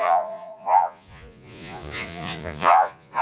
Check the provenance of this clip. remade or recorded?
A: remade